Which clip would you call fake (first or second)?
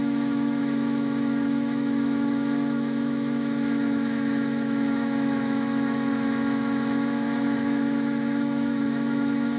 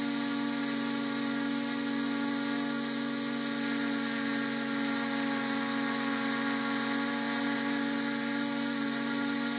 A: first